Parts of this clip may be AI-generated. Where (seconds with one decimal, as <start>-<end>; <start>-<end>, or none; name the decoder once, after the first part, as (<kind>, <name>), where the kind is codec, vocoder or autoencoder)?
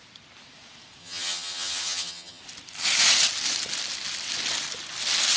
1.0-2.4 (vocoder, HiFi-GAN)